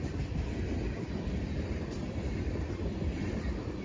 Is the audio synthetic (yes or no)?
yes